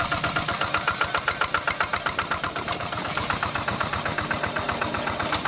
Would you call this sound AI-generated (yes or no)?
no